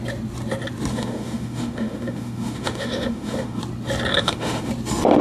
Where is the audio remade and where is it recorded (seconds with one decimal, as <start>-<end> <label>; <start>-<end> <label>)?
0.0-0.9 recorded; 0.9-3.6 remade; 3.6-4.1 recorded; 4.1-4.7 remade; 4.7-5.2 recorded